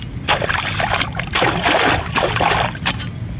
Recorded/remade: recorded